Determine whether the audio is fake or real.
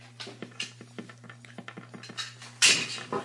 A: real